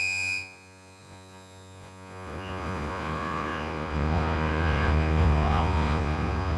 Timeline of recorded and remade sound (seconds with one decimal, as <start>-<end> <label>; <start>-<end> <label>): 0.0-6.6 remade